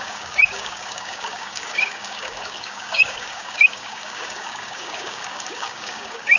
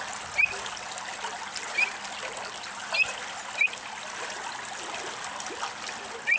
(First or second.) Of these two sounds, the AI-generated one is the first